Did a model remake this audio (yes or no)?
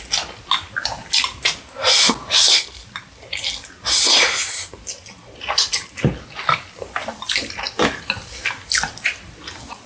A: no